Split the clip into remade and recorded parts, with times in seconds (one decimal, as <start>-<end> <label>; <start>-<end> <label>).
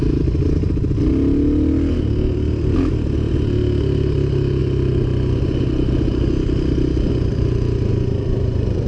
0.0-7.9 recorded; 7.9-8.9 remade